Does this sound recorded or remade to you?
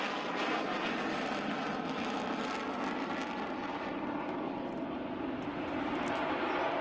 recorded